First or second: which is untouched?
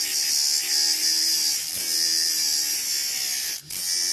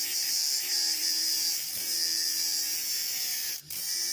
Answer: first